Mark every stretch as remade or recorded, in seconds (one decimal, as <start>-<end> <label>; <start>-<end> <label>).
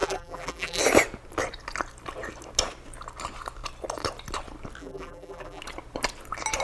0.0-0.8 remade; 0.8-4.8 recorded; 4.8-5.6 remade; 5.6-6.6 recorded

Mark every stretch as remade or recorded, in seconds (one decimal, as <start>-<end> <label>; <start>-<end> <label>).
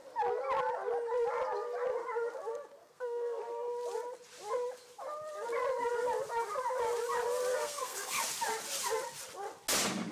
0.0-2.8 recorded; 2.8-3.4 remade; 3.4-7.5 recorded; 7.5-8.2 remade; 8.2-10.1 recorded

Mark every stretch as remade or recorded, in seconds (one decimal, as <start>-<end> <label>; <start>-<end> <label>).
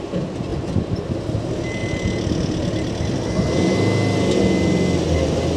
0.0-5.6 recorded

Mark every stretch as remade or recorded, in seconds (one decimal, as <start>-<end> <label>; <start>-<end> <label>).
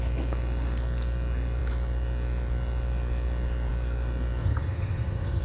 0.0-4.4 recorded; 4.4-5.4 remade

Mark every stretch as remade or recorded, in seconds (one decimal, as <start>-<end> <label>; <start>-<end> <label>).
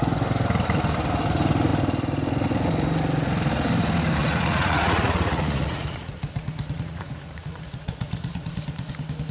0.0-4.2 recorded; 4.2-8.9 remade; 8.9-9.3 recorded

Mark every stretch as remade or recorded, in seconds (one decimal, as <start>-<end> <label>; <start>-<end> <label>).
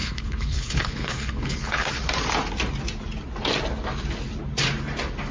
0.0-1.9 remade; 1.9-5.3 recorded